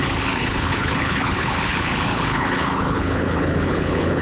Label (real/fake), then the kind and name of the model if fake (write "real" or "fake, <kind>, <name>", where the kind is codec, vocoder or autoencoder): fake, codec, HILCodec